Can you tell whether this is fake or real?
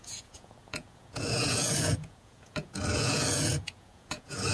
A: fake